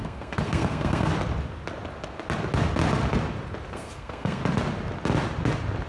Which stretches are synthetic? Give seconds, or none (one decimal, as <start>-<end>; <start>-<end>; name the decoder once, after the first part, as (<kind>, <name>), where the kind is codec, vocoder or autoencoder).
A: 0.0-1.1 (codec, SNAC); 3.7-4.4